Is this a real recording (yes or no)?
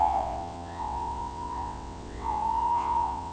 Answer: no